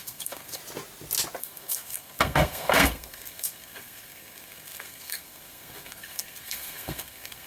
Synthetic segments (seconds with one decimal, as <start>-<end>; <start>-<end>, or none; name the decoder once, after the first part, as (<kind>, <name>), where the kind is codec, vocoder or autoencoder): 0.0-0.6 (codec, SNAC); 1.4-7.5

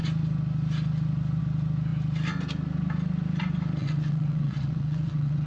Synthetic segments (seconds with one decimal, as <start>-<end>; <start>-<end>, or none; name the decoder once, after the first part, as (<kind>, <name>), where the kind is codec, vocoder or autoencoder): 3.8-5.5 (vocoder, WaveNeXt)

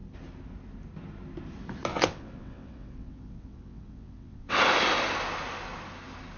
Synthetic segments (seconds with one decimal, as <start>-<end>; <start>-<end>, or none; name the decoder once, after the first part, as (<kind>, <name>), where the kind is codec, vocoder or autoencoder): 1.9-4.6 (vocoder, WaveNeXt)

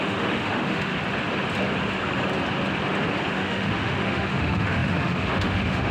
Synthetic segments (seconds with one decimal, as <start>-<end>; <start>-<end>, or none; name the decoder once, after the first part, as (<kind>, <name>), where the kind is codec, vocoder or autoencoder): 0.0-0.9 (autoencoder, DAC-VAE); 3.3-5.9